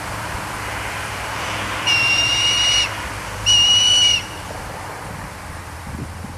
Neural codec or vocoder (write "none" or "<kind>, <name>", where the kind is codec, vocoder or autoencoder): vocoder, BigVGAN v2